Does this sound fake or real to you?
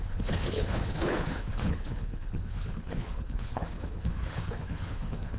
fake